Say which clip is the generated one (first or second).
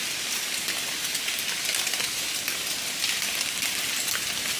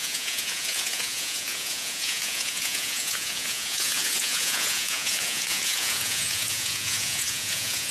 second